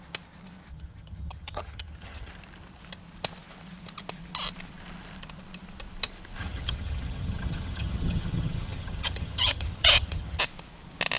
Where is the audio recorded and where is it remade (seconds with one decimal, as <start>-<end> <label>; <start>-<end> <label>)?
0.0-0.7 recorded; 0.7-2.3 remade; 2.3-6.4 recorded; 6.4-10.4 remade; 10.4-11.2 recorded